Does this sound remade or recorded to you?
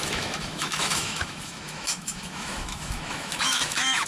remade